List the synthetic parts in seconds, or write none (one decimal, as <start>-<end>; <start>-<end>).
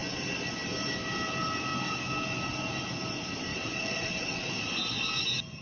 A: 3.5-4.5